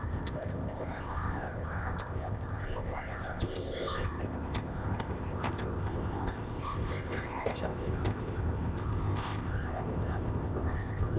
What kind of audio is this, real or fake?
fake